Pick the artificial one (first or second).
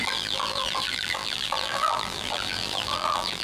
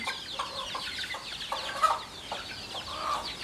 first